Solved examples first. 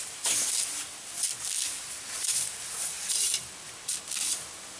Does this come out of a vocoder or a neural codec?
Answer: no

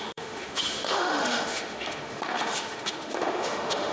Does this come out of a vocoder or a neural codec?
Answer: yes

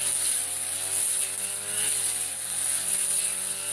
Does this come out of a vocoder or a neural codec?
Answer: no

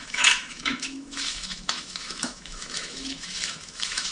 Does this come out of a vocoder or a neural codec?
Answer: yes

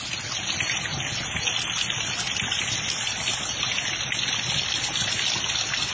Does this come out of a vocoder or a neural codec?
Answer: no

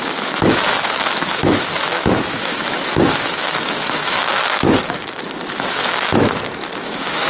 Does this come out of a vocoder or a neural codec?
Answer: yes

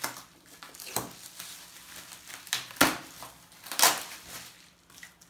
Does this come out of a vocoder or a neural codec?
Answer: no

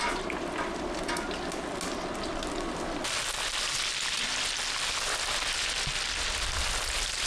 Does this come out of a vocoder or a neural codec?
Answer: no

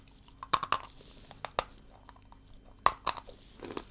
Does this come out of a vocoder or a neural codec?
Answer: no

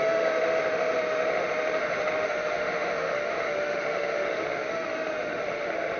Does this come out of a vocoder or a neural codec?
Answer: yes